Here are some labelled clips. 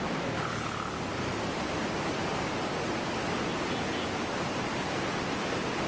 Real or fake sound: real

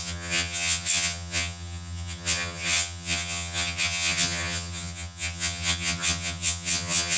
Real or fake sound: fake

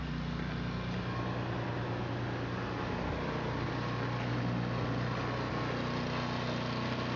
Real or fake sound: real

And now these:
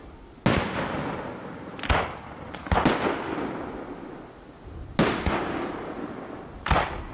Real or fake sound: real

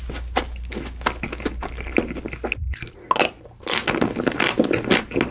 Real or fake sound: real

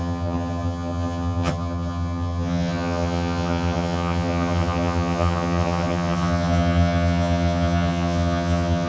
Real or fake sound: fake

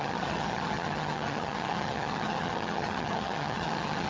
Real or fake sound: fake